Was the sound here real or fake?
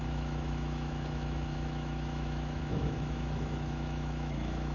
fake